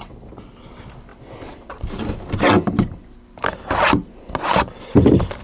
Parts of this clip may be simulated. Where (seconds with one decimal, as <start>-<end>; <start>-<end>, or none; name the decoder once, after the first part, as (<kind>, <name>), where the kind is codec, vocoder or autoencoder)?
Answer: none